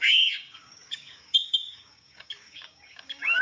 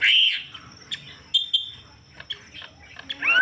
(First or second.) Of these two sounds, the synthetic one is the first